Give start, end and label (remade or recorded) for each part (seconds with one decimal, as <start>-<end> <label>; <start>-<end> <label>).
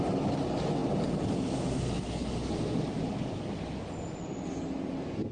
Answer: 0.0-5.3 recorded